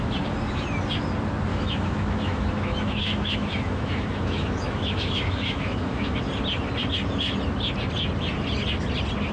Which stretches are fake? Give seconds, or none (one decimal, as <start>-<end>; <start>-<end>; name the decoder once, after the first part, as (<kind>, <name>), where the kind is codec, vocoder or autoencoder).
1.5-6.2 (autoencoder, DAC-VAE)